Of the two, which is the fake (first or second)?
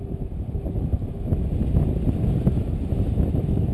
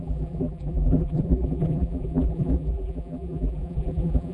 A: second